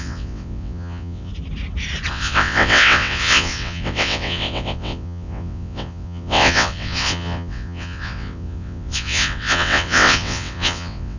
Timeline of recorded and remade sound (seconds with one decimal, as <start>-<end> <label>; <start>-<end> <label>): 0.0-1.3 remade; 1.3-2.1 recorded; 2.1-11.2 remade